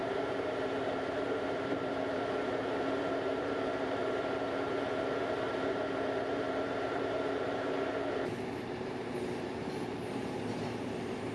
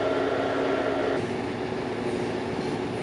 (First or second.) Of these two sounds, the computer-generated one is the first